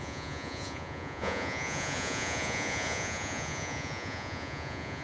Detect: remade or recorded remade